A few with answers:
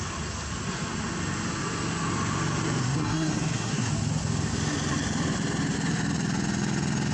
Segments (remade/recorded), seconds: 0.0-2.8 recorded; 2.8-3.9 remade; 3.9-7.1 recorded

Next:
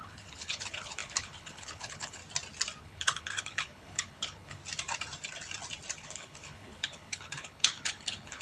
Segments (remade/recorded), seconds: 0.0-2.2 remade; 2.2-2.8 recorded; 2.8-4.6 remade; 4.6-6.0 recorded; 6.0-8.4 remade

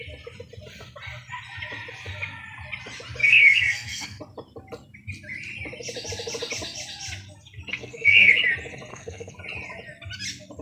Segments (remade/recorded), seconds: 0.0-3.2 recorded; 3.2-4.2 remade; 4.2-7.7 recorded; 7.7-8.3 remade; 8.3-8.9 recorded; 8.9-9.4 remade; 9.4-10.6 recorded

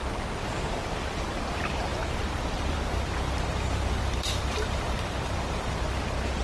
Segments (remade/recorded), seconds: 0.0-1.9 recorded; 1.9-5.7 remade; 5.7-6.4 recorded

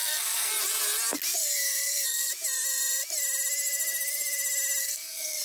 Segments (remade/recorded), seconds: 0.0-0.5 remade; 0.5-1.4 recorded; 1.4-2.3 remade; 2.3-4.8 recorded; 4.8-5.4 remade

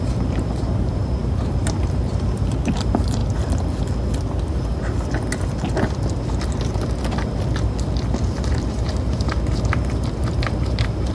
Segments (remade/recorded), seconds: 0.0-3.2 remade; 3.2-8.4 recorded; 8.4-11.1 remade